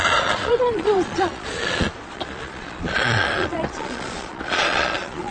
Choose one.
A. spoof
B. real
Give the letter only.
A